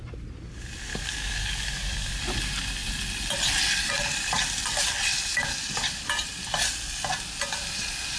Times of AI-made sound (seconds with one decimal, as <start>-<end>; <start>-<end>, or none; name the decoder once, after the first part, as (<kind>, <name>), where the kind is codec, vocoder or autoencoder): 0.9-2.1 (codec, DAC)

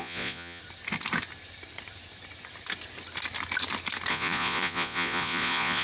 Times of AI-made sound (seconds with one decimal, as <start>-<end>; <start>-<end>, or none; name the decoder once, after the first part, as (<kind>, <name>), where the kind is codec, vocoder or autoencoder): 0.0-0.6 (vocoder, Vocos); 4.1-5.8